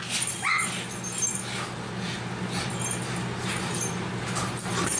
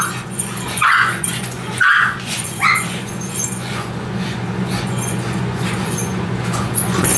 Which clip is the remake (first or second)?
second